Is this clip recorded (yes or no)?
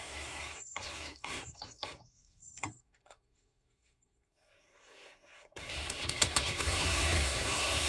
no